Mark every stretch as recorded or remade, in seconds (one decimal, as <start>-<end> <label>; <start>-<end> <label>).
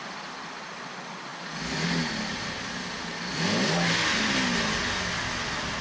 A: 0.0-5.8 recorded